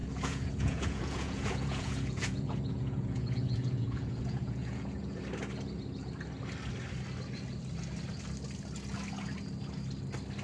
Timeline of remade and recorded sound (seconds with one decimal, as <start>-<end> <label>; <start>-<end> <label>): 0.0-5.2 remade; 5.2-10.4 recorded